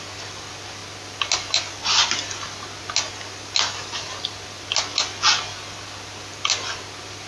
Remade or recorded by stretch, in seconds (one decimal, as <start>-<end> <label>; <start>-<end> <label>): 0.0-7.3 recorded